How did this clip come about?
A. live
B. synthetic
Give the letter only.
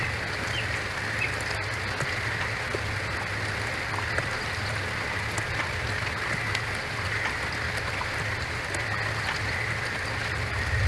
A